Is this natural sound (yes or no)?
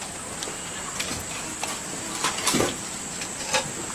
yes